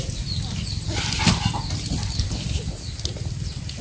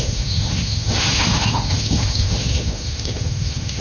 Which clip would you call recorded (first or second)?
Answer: first